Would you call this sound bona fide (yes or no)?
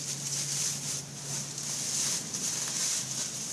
yes